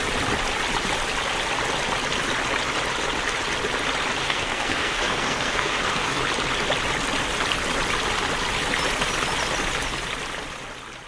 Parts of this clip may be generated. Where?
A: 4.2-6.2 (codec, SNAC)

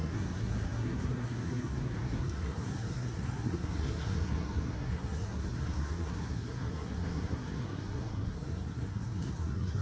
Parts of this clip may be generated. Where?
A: 0.0-9.8 (codec, SNAC)

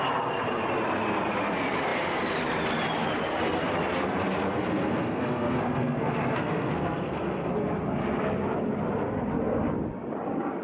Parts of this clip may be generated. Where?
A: 4.7-7.5 (codec, SNAC)

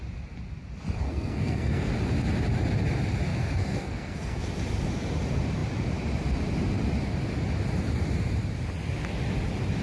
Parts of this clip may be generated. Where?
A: 1.0-1.9 (codec, SNAC); 3.3-4.4